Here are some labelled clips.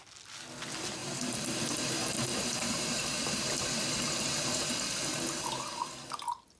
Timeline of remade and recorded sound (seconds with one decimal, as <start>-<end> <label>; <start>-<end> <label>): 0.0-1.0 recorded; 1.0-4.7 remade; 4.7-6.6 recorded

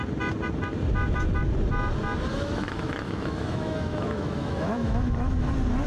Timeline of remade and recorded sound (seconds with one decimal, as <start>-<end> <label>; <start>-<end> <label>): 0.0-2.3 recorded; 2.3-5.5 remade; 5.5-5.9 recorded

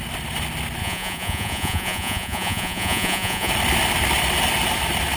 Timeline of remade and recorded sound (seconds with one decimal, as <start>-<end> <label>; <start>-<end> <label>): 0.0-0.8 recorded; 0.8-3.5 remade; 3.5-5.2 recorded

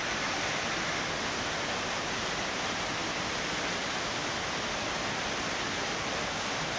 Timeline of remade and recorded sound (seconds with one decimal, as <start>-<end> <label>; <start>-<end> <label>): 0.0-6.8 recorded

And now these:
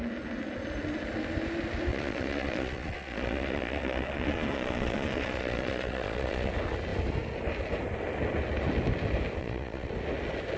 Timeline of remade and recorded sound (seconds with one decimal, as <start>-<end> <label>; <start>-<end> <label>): 0.0-1.9 recorded; 1.9-6.5 remade; 6.5-9.4 recorded; 9.4-9.9 remade; 9.9-10.6 recorded